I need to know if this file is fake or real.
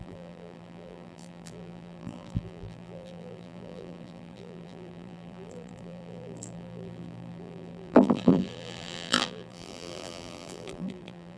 fake